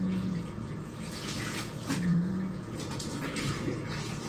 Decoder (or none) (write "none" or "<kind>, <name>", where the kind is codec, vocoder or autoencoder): vocoder, Vocos